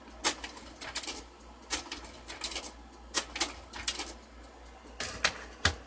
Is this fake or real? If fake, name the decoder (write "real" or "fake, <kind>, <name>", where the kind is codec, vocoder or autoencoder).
real